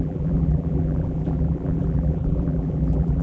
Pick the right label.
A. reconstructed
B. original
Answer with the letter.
A